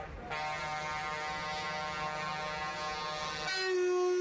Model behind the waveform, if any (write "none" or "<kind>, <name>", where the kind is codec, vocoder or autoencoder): none